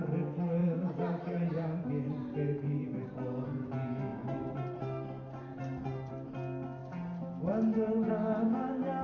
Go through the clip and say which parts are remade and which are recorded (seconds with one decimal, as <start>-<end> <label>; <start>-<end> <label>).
0.0-0.6 recorded; 0.6-1.9 remade; 1.9-2.3 recorded; 2.3-3.1 remade; 3.1-4.1 recorded; 4.1-6.1 remade; 6.1-6.8 recorded; 6.8-8.1 remade; 8.1-9.0 recorded